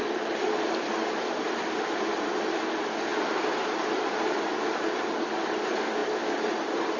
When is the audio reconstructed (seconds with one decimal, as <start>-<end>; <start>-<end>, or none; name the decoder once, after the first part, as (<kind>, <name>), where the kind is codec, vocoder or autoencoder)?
none